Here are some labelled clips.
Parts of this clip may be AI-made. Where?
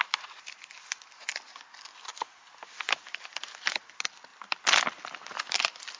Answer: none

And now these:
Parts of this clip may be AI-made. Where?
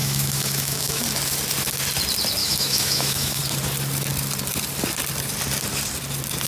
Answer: 0.0-1.0 (autoencoder, DAC-VAE); 2.4-3.4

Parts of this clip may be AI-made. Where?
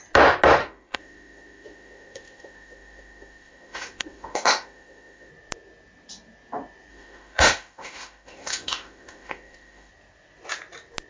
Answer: 0.6-5.3 (autoencoder, DAC-VAE); 6.9-9.9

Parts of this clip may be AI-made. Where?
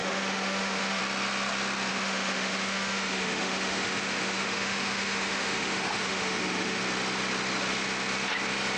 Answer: 0.0-1.0 (autoencoder, DAC-VAE); 1.9-6.8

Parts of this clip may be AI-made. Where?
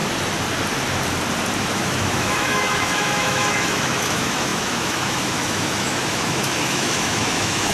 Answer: 1.7-7.7 (autoencoder, DAC-VAE)